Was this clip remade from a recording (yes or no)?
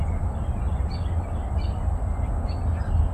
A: no